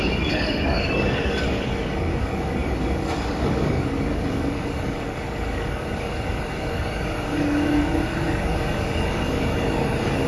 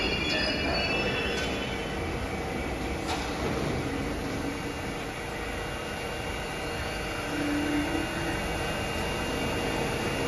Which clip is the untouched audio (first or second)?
second